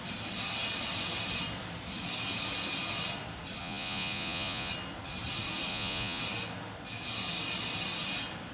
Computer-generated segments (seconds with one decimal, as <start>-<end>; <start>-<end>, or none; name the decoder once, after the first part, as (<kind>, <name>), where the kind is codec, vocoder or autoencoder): 3.6-4.7 (vocoder, Vocos); 5.7-6.2